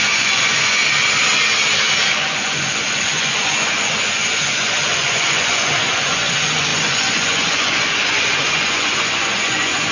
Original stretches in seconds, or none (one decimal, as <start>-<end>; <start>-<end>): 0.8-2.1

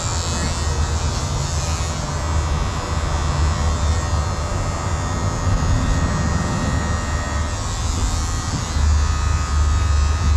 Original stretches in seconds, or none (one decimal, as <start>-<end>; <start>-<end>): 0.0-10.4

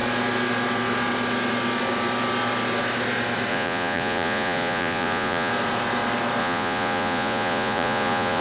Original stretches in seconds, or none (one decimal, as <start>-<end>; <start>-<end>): 0.0-3.5; 5.5-6.4

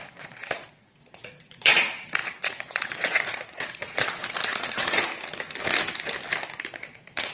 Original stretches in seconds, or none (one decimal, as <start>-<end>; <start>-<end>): 5.1-6.5